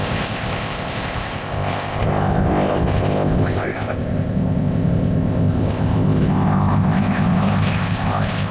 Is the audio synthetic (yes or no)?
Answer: yes